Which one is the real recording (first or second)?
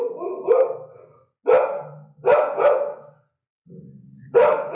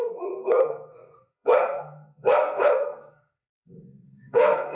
first